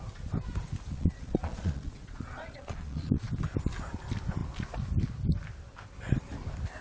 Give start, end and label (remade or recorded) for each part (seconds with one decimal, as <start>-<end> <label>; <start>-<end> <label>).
0.0-0.9 recorded; 0.9-3.3 remade; 3.3-6.8 recorded